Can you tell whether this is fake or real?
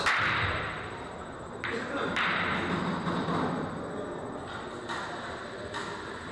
real